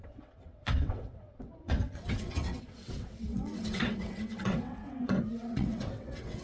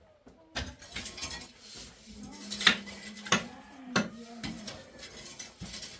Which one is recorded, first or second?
second